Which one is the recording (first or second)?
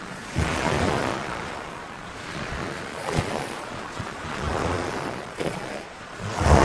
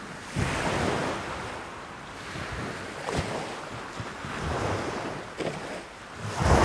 second